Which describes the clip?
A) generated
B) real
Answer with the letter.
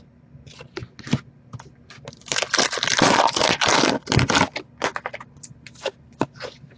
B